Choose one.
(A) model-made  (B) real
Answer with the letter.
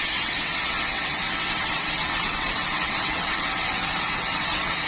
A